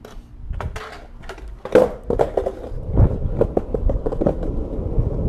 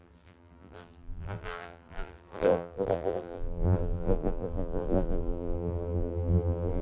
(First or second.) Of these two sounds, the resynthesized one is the second